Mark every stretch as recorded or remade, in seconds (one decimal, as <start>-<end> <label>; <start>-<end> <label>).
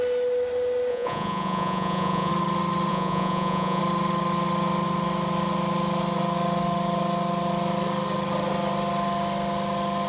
0.0-0.9 recorded; 0.9-2.3 remade; 2.3-2.9 recorded; 2.9-3.8 remade; 3.8-10.1 recorded